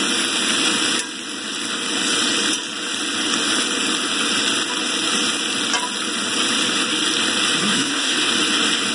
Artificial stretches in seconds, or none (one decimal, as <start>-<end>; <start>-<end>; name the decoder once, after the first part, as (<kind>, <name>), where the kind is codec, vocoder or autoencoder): 7.6-8.3 (codec, SNAC)